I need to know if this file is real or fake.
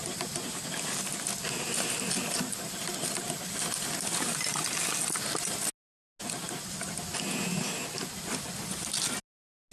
real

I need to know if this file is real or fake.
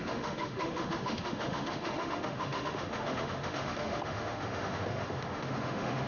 fake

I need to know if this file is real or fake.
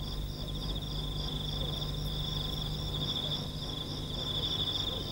real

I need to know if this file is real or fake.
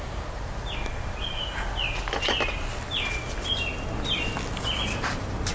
real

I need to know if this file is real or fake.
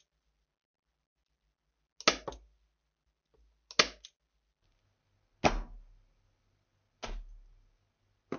real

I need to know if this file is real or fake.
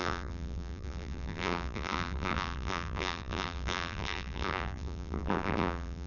fake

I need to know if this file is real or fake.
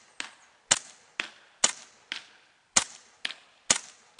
real